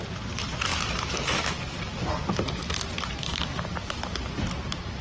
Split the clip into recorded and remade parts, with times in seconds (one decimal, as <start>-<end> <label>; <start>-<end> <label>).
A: 0.0-0.7 recorded; 0.7-1.5 remade; 1.5-5.0 recorded